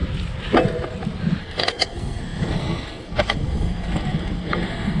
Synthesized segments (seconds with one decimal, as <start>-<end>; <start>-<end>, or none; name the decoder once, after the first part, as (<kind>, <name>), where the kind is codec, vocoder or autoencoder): 1.4-5.0 (codec, SNAC)